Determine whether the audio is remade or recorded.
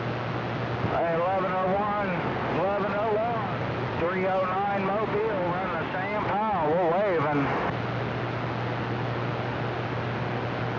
recorded